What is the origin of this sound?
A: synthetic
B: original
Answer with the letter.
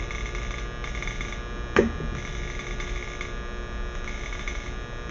B